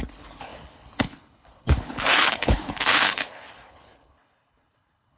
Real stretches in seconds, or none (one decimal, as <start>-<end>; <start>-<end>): none